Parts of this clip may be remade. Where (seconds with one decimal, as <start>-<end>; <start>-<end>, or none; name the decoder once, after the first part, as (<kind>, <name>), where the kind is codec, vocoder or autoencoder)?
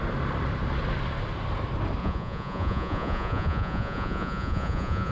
2.0-5.1 (vocoder, Vocos)